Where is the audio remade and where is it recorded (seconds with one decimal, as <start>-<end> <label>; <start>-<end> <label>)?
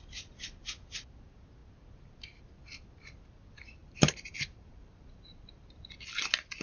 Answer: 0.0-3.8 recorded; 3.8-6.0 remade; 6.0-6.6 recorded